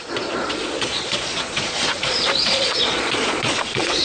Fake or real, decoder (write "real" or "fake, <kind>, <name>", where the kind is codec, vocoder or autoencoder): fake, vocoder, Vocos